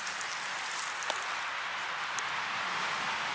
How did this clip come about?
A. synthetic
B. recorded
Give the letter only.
B